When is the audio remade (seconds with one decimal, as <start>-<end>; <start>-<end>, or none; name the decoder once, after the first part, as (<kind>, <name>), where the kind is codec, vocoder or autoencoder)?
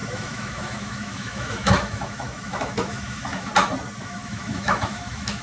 0.0-3.5 (autoencoder, DAC-VAE); 4.0-5.4